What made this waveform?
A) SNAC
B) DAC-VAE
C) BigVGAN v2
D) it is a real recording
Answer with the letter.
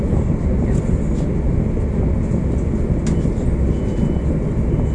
D